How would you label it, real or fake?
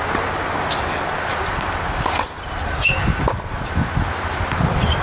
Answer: real